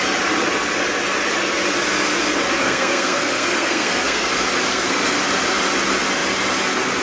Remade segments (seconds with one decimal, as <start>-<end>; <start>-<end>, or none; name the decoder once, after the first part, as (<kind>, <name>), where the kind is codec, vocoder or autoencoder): 2.6-4.3 (codec, SNAC); 4.7-5.2